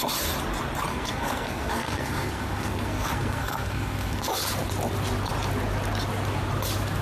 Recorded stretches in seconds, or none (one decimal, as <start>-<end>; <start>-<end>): 0.0-0.9; 4.3-7.0

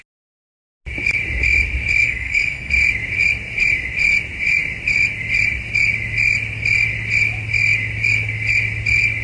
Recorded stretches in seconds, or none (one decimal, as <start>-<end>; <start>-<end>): 0.0-2.0; 2.7-9.2

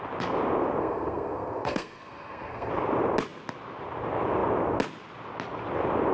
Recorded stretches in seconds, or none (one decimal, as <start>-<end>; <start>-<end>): 0.0-0.8; 2.7-6.1

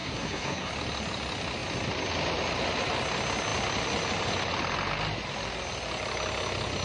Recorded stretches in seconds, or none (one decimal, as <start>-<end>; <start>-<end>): 0.7-6.8